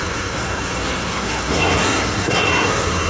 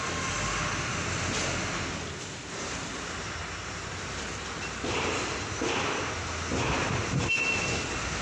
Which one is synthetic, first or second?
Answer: first